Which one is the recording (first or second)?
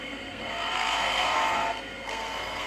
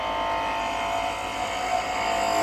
second